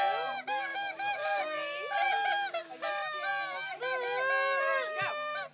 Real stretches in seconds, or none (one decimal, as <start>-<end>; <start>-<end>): 0.0-0.7; 1.4-5.5